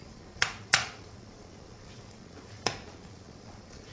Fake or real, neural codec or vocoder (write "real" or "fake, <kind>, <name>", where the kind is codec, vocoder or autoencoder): fake, vocoder, Vocos